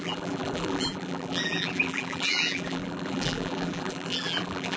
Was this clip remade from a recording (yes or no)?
yes